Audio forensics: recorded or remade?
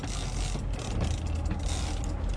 recorded